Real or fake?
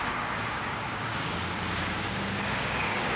fake